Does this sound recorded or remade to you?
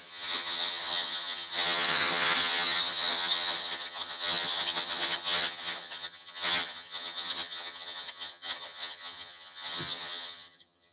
remade